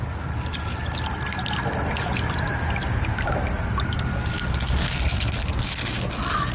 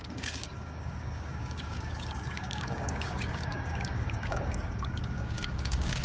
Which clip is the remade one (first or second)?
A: second